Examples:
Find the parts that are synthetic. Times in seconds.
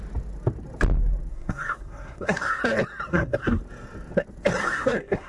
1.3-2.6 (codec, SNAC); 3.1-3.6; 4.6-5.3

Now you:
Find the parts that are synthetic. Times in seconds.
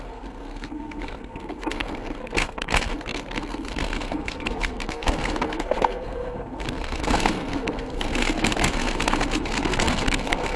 0.0-10.6 (codec, SNAC)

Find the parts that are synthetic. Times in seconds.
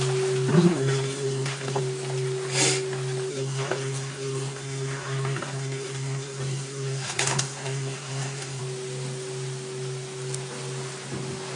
0.5-1.8 (codec, SNAC); 3.3-8.6